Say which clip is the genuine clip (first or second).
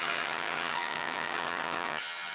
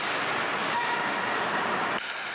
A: second